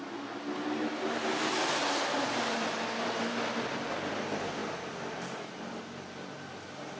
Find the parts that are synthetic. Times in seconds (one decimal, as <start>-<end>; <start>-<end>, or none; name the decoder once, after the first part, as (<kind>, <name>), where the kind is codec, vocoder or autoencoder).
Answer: none